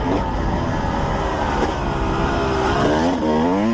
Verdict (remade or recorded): recorded